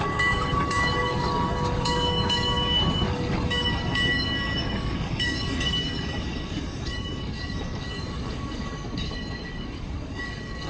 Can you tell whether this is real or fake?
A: fake